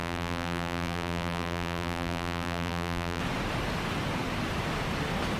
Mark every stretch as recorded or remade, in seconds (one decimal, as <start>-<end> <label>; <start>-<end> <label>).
0.0-3.2 remade; 3.2-5.4 recorded